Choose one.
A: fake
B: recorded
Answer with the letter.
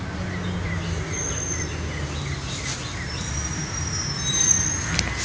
B